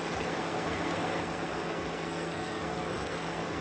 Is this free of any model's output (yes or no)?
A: no